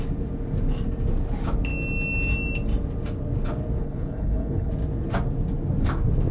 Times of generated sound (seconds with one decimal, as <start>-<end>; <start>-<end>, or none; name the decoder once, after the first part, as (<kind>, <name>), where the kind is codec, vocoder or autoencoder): 3.8-4.7 (codec, HILCodec)